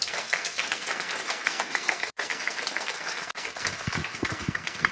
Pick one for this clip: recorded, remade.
remade